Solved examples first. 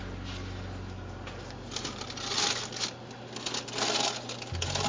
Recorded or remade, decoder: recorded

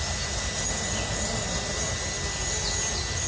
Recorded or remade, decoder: recorded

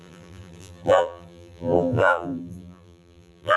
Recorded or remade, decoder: remade, vocoder, BigVGAN v2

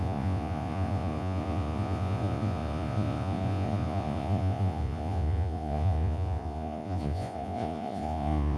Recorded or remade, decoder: remade, vocoder, Vocos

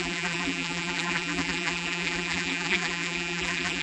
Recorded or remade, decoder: remade, vocoder, BigVGAN v2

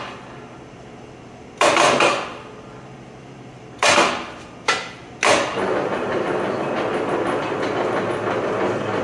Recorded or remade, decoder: recorded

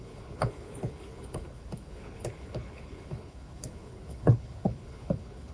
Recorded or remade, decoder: remade, codec, HILCodec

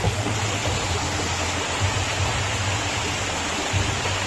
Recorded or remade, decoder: recorded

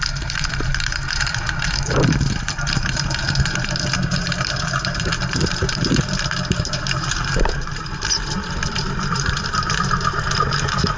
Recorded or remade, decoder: remade, vocoder, BigVGAN v2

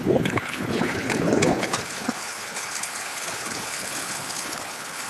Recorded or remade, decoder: remade, codec, HILCodec